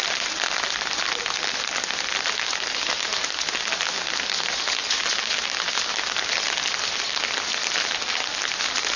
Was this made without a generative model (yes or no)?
yes